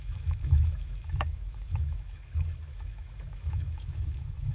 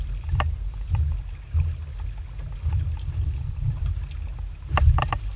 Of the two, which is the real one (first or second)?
second